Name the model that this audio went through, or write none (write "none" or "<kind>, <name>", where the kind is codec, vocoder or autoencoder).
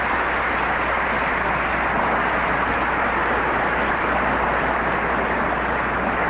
none